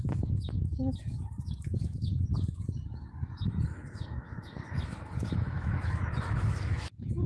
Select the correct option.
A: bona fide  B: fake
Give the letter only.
B